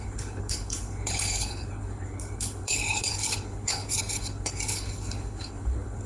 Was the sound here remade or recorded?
remade